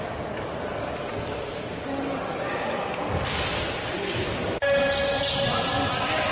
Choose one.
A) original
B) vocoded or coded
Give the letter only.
A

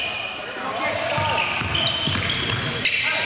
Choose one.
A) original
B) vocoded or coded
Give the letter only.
A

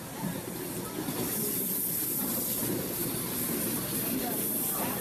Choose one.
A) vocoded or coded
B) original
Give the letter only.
B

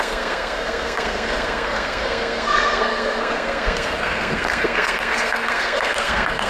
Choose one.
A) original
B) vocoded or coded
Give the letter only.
B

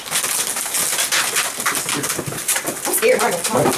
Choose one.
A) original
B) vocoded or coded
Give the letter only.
A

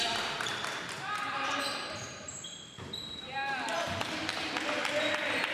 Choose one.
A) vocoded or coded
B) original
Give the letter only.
A